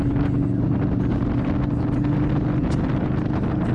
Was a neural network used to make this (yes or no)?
no